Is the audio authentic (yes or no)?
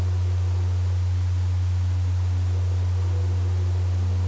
yes